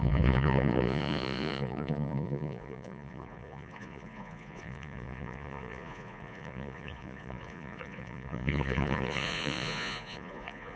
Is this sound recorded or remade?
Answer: remade